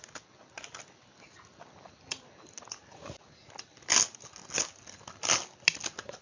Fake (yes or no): no